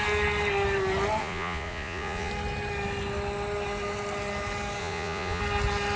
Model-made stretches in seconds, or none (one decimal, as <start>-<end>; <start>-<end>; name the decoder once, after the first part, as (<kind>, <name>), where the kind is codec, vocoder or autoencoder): 1.2-2.3 (vocoder, Vocos); 4.8-5.4